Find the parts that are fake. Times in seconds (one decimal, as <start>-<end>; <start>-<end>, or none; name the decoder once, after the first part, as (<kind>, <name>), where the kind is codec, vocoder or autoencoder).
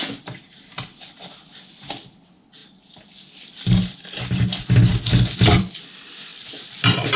none